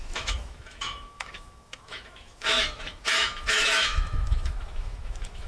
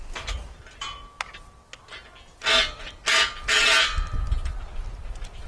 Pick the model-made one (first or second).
first